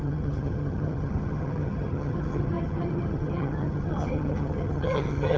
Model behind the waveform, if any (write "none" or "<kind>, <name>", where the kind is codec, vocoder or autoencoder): vocoder, HiFi-GAN